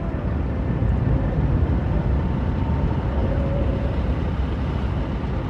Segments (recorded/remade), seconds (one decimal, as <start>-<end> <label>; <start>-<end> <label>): 0.0-5.5 recorded